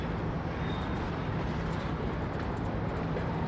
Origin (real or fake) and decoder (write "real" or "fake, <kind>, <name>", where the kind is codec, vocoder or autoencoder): real